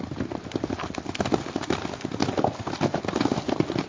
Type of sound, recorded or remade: recorded